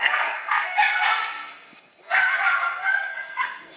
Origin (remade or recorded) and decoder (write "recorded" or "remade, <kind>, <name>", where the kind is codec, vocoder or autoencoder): remade, codec, SNAC